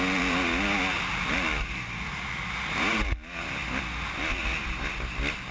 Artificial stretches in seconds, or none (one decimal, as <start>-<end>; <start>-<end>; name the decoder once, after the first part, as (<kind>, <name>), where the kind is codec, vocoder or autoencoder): none